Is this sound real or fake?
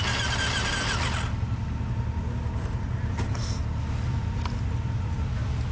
real